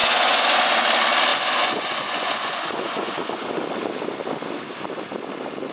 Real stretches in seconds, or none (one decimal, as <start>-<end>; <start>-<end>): 0.8-1.3; 3.6-5.7